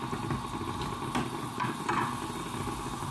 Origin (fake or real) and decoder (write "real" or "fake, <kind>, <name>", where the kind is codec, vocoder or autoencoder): real